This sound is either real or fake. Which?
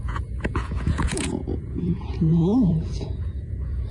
fake